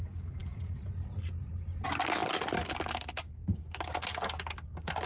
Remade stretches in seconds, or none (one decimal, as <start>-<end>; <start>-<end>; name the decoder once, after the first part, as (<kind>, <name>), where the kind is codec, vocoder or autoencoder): 0.4-1.5 (vocoder, BigVGAN v2); 2.2-2.7